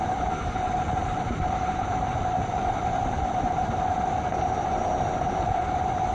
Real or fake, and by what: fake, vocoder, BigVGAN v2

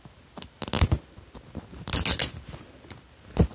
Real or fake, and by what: real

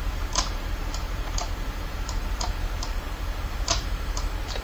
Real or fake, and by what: fake, vocoder, BigVGAN v2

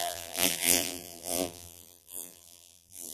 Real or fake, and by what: fake, vocoder, BigVGAN v2